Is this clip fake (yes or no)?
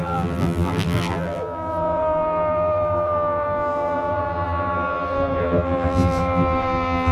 yes